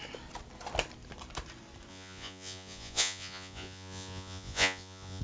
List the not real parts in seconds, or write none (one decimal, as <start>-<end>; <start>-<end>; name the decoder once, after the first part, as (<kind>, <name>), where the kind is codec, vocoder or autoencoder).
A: 1.9-5.2 (vocoder, Vocos)